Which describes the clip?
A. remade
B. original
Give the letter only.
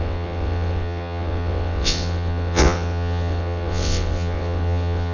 A